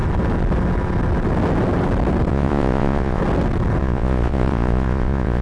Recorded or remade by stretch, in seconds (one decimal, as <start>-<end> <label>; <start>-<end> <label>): 0.0-2.3 recorded; 2.3-3.2 remade; 3.2-3.8 recorded; 3.8-5.4 remade